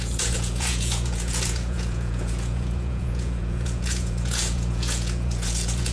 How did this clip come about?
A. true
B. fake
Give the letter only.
B